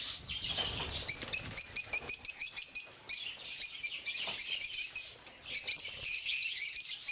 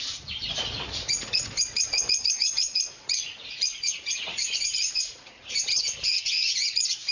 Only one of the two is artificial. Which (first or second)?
second